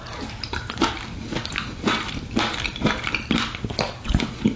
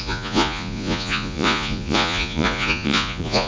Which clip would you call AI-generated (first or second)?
second